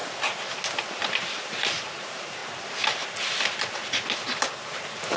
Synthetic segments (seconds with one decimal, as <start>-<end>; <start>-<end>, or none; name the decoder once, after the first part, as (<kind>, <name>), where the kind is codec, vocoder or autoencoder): 1.2-2.4 (vocoder, BigVGAN v2); 4.5-5.2